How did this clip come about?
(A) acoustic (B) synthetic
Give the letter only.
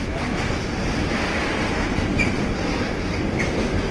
A